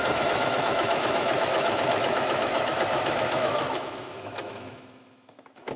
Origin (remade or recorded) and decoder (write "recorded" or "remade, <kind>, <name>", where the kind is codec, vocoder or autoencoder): remade, autoencoder, DAC-VAE